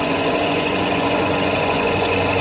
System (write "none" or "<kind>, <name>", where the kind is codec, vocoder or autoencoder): vocoder, Vocos